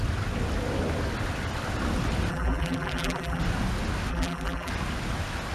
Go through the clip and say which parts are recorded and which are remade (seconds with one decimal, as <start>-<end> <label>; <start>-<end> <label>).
0.0-2.3 recorded; 2.3-3.4 remade; 3.4-4.1 recorded; 4.1-4.7 remade; 4.7-5.5 recorded